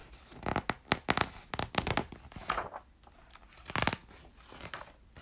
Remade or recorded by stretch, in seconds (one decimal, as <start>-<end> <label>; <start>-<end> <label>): 0.0-5.2 recorded